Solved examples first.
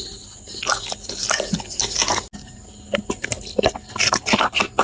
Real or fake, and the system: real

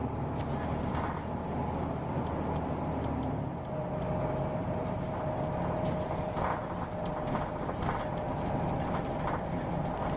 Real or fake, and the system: real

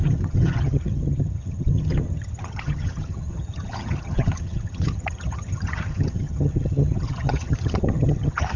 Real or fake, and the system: fake, vocoder, HiFi-GAN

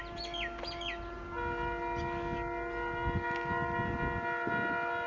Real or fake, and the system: real